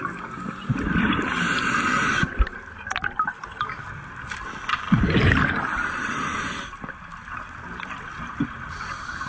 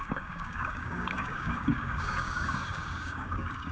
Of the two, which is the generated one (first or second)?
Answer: second